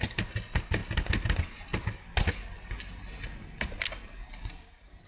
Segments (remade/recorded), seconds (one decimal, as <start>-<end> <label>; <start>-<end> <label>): 0.0-5.1 recorded